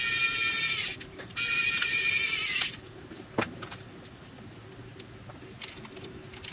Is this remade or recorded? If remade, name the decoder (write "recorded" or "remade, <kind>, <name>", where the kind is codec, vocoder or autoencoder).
recorded